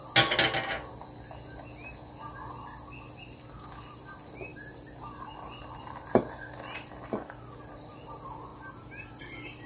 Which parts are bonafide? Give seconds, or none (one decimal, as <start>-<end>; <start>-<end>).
0.0-9.7